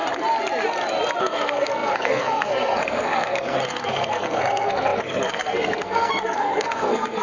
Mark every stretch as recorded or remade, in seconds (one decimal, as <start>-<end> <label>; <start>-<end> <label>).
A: 0.0-1.2 recorded; 1.2-7.2 remade